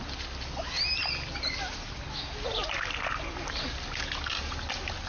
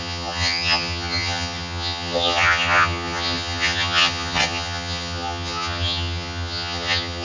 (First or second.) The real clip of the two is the first